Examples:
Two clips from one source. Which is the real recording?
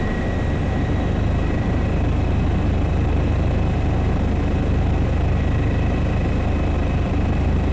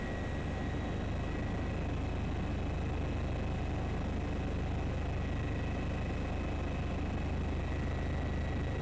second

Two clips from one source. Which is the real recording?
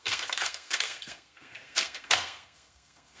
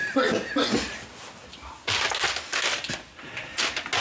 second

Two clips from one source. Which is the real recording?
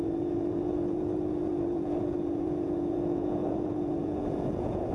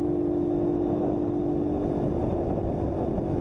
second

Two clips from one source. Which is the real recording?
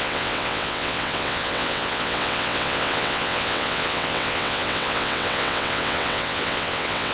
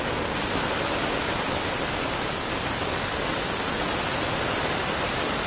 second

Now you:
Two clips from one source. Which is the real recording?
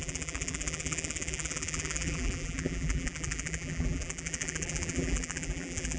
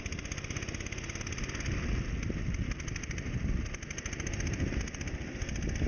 second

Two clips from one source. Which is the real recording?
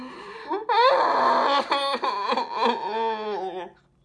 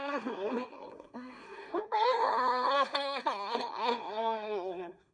first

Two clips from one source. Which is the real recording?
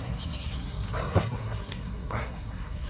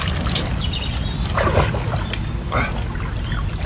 second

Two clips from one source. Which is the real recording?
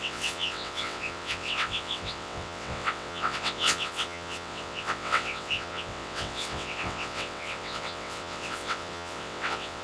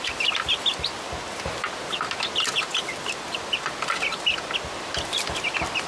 second